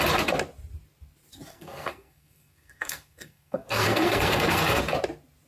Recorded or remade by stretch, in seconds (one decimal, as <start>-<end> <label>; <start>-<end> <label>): 0.0-1.5 recorded; 1.5-4.8 remade; 4.8-5.5 recorded